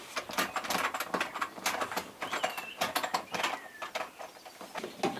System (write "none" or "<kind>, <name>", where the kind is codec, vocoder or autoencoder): none